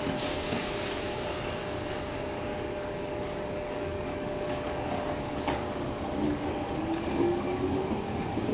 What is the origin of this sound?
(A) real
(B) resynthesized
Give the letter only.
B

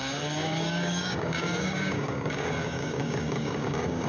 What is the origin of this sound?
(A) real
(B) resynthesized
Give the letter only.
B